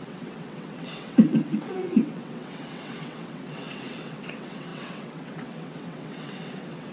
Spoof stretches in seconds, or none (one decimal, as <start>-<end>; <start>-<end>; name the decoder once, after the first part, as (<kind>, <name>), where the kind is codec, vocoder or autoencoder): 0.0-6.9 (vocoder, WaveNeXt)